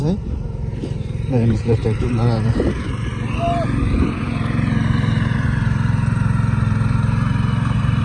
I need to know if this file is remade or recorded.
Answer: remade